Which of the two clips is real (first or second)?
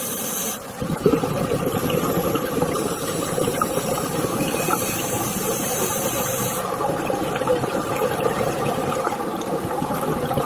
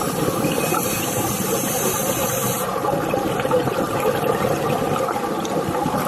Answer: second